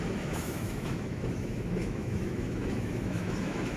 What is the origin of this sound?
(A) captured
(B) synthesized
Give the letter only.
B